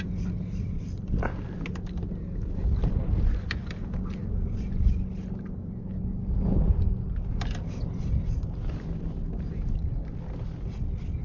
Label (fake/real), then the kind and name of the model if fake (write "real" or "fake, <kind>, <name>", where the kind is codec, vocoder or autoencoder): real